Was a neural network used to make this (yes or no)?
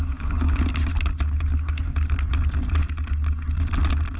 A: no